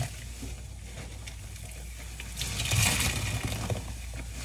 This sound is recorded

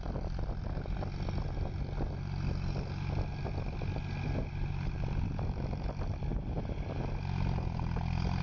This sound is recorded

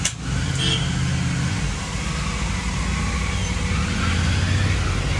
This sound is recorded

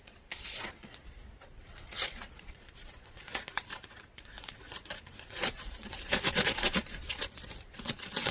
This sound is remade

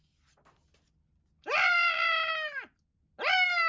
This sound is recorded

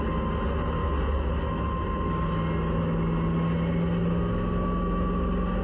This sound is recorded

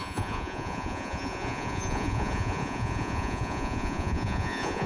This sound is remade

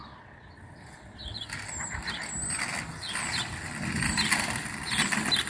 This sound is recorded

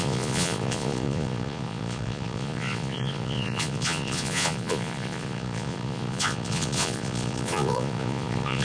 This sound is remade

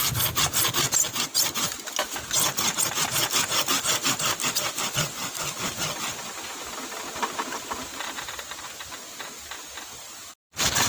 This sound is recorded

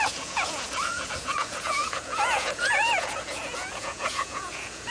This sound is remade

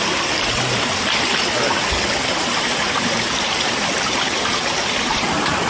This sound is recorded